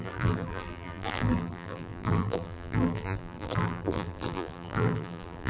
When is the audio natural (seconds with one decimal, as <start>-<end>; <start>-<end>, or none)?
none